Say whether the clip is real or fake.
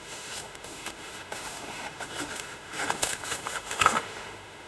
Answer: fake